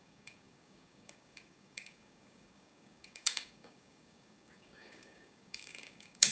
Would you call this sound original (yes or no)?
no